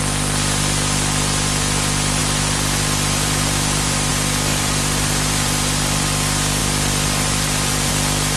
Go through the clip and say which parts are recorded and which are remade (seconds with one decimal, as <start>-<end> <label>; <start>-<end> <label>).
0.0-2.2 recorded; 2.2-4.1 remade; 4.1-4.5 recorded; 4.5-6.0 remade; 6.0-6.6 recorded; 6.6-7.9 remade; 7.9-8.4 recorded